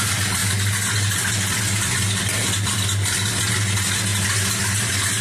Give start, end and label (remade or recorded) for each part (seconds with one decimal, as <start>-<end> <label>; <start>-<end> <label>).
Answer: 0.0-5.2 recorded